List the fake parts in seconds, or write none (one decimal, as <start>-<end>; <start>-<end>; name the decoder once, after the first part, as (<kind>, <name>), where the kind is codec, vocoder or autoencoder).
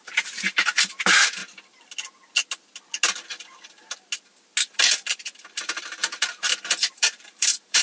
0.0-1.4 (vocoder, BigVGAN v2); 5.1-7.8